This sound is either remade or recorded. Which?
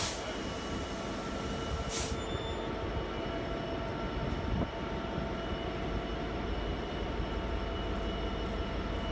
recorded